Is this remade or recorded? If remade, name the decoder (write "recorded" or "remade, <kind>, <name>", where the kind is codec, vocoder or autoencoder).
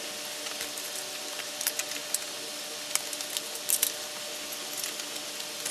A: recorded